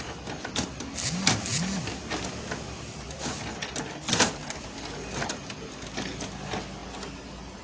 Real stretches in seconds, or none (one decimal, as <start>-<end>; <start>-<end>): 0.0-7.6